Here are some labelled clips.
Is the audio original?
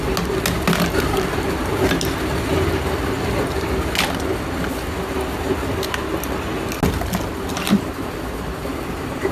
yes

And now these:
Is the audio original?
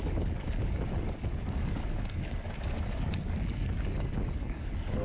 no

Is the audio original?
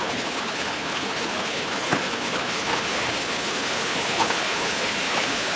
no